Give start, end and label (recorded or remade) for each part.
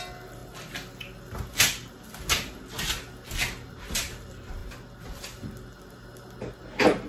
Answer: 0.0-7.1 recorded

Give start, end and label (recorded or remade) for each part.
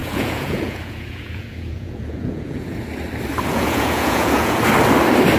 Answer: 0.0-2.8 remade; 2.8-3.5 recorded; 3.5-4.6 remade; 4.6-5.4 recorded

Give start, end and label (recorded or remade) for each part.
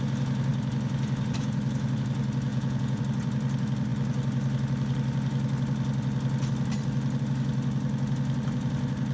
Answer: 0.0-2.5 recorded; 2.5-3.0 remade; 3.0-9.1 recorded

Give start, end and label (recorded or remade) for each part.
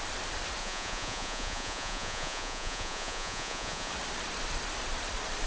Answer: 0.0-0.6 recorded; 0.6-3.9 remade; 3.9-5.5 recorded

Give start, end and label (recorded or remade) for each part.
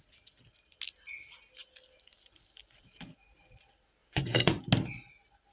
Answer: 0.0-4.0 recorded; 4.0-4.6 remade; 4.6-5.5 recorded